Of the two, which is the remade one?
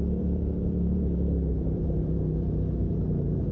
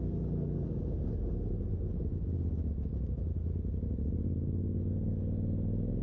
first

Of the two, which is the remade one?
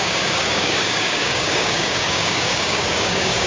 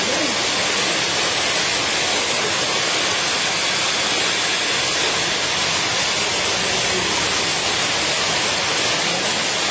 first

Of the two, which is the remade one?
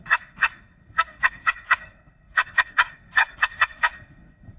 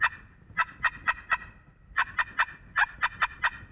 first